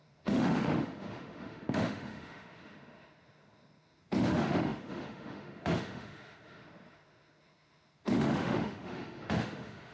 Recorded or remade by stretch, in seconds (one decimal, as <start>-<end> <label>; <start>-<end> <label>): 0.0-9.9 remade